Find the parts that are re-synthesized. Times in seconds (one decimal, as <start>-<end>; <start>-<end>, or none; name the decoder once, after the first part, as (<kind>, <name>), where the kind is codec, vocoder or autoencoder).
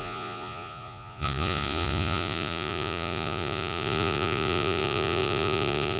0.0-6.0 (vocoder, Vocos)